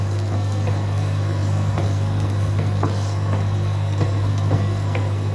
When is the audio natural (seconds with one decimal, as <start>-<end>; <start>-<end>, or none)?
none